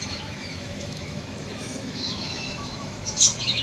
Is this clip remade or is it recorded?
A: remade